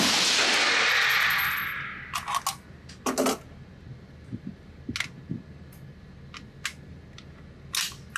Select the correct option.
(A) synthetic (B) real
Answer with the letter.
B